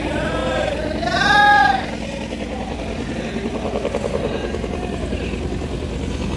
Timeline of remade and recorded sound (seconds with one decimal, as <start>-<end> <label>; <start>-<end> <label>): 0.0-6.4 recorded

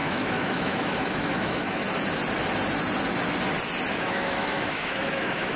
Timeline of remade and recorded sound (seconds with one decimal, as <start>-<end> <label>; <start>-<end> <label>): 0.0-1.8 remade; 1.8-3.9 recorded; 3.9-5.6 remade

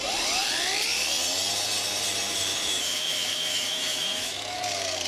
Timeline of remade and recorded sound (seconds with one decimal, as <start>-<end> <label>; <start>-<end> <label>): 0.0-2.5 recorded; 2.5-4.6 remade; 4.6-5.1 recorded

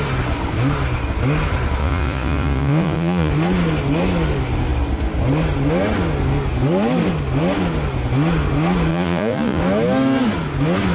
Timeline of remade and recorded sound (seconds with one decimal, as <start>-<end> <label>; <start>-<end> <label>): 0.0-1.8 recorded; 1.8-3.3 remade; 3.3-8.9 recorded; 8.9-9.6 remade; 9.6-10.9 recorded